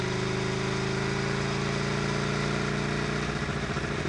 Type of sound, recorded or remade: recorded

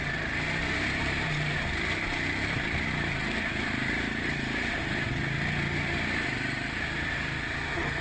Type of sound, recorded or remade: recorded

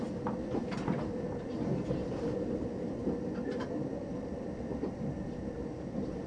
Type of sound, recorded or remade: remade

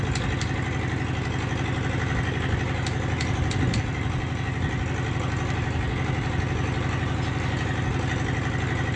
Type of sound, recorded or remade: recorded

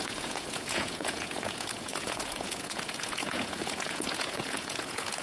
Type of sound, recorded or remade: remade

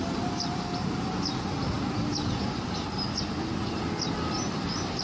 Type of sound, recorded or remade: recorded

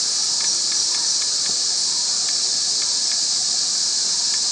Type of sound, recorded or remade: recorded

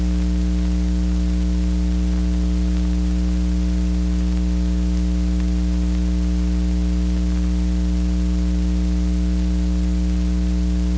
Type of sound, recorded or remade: recorded